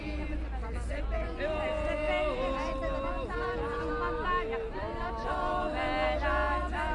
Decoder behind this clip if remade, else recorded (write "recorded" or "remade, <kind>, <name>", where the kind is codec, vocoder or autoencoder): recorded